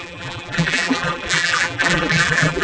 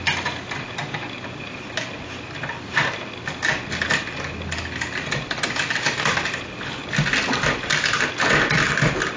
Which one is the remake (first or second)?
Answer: first